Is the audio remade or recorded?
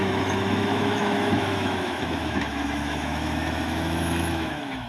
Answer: remade